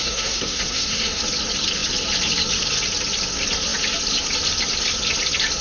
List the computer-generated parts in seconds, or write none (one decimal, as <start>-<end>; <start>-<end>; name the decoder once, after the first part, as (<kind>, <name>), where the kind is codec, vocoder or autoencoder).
0.0-1.2 (codec, SNAC)